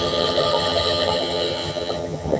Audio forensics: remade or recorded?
remade